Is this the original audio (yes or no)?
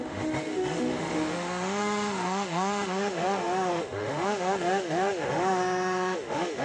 no